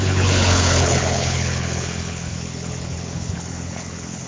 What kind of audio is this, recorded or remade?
remade